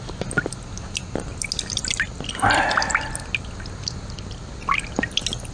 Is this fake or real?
real